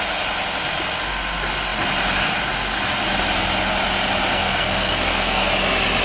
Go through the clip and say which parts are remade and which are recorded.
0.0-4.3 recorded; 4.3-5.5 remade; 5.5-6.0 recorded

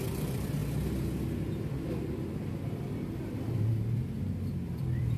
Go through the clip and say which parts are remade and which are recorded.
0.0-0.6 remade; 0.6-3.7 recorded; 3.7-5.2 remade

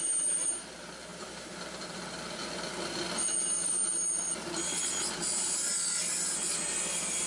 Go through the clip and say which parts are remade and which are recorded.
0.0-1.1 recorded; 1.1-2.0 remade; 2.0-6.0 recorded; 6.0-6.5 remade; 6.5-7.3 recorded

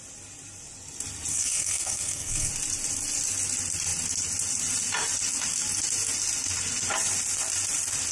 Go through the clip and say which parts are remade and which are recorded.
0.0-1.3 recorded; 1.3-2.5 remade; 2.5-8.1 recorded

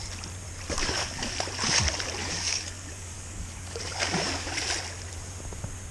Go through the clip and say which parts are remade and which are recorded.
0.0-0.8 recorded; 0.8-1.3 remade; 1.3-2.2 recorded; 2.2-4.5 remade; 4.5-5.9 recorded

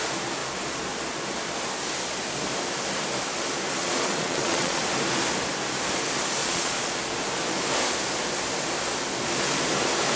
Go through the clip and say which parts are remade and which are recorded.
0.0-3.8 recorded; 3.8-4.8 remade; 4.8-6.4 recorded; 6.4-7.0 remade; 7.0-10.2 recorded

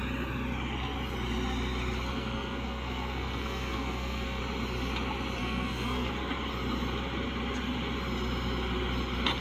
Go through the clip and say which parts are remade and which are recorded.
0.0-2.1 recorded; 2.1-4.4 remade; 4.4-5.4 recorded; 5.4-6.1 remade; 6.1-9.4 recorded